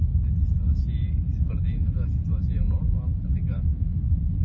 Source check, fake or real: real